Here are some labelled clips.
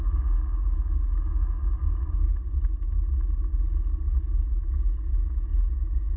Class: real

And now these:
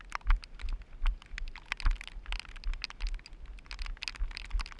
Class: real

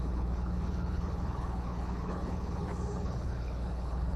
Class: fake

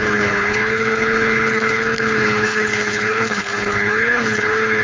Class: fake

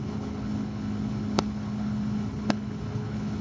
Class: fake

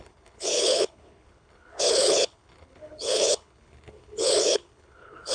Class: fake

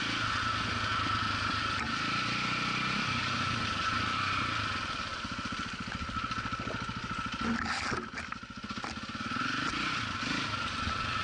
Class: real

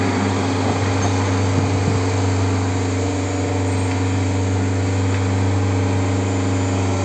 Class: real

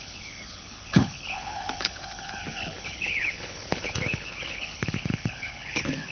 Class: fake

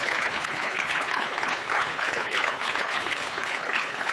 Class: fake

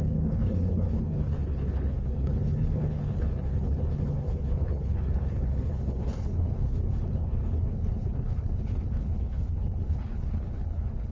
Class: fake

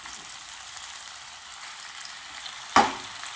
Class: real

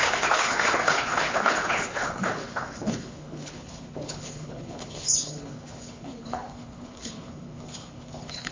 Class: fake